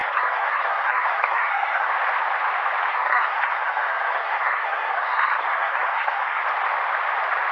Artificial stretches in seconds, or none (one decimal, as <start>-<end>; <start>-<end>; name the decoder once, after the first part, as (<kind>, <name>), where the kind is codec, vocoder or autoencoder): 0.0-1.9 (codec, SNAC); 2.9-6.4